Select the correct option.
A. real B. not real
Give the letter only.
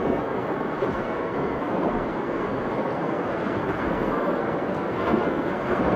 B